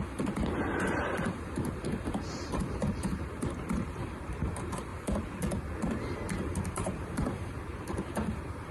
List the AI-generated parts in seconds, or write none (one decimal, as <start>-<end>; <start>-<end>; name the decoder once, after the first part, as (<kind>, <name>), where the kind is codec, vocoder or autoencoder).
0.0-4.9 (vocoder, BigVGAN v2); 6.7-8.7